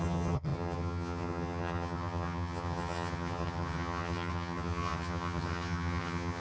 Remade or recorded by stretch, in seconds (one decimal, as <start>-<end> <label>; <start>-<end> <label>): 0.0-6.4 remade